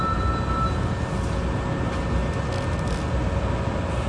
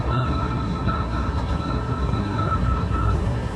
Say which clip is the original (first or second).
first